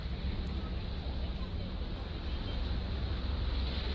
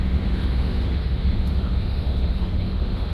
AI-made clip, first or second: second